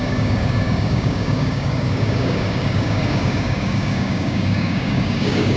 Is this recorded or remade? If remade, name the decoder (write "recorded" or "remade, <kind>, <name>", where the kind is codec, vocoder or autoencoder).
remade, codec, DAC